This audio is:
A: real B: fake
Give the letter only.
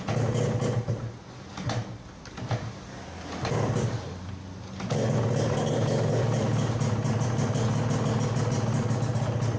A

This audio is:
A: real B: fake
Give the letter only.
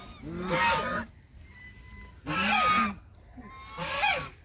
A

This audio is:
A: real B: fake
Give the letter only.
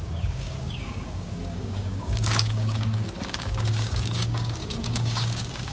B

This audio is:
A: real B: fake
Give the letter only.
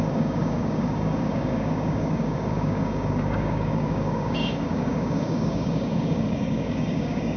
B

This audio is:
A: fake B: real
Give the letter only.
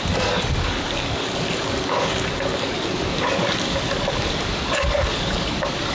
A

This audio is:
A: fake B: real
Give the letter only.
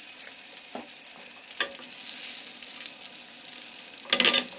B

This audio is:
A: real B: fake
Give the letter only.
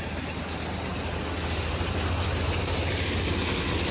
A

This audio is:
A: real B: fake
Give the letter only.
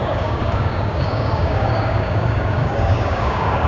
B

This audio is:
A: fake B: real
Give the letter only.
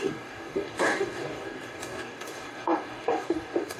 A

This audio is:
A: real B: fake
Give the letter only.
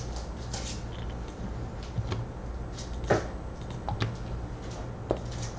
A